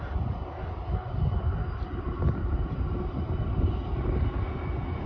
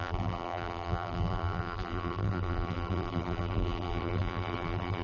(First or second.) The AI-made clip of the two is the second